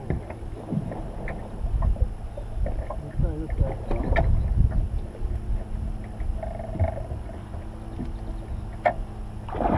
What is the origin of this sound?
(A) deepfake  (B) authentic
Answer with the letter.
B